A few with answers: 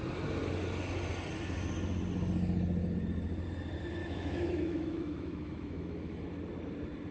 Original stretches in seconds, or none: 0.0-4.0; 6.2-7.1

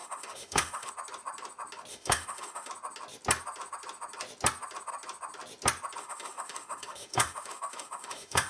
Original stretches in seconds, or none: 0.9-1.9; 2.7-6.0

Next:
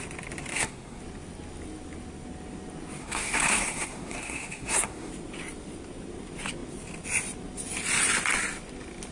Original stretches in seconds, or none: 0.0-0.5; 1.0-3.0; 5.1-9.1

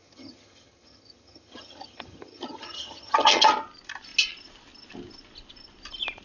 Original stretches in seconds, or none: 3.5-6.2

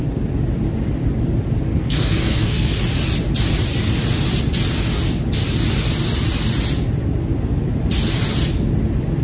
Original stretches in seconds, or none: 0.0-1.7; 2.7-9.2

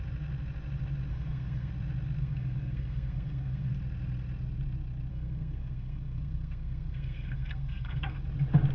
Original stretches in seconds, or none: 0.0-1.1; 1.7-2.2; 3.7-5.1; 8.2-8.7